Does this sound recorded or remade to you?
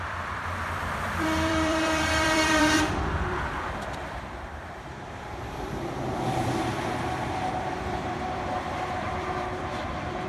remade